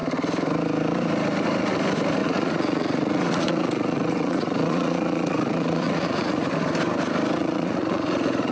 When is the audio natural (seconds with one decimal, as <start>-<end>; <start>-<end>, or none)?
0.0-2.2; 6.5-7.4